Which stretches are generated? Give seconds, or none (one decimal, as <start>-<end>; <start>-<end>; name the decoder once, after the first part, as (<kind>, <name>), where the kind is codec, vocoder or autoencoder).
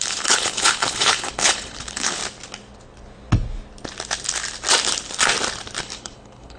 0.0-2.2 (codec, HILCodec); 5.8-6.6